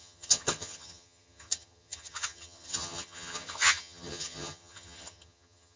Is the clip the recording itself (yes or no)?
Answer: no